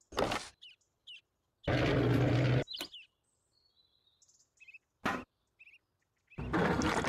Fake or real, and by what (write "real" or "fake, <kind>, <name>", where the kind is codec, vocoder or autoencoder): real